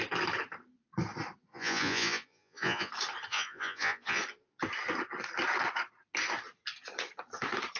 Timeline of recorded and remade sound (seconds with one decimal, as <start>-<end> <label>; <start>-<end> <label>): 0.0-1.5 recorded; 1.5-2.9 remade; 2.9-3.3 recorded; 3.3-4.2 remade; 4.2-7.8 recorded